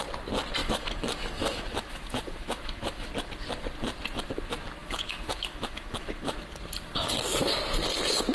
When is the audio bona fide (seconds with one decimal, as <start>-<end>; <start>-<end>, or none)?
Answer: 0.0-0.6; 3.1-4.8; 6.4-8.3